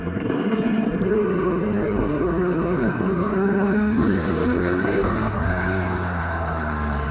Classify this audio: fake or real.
fake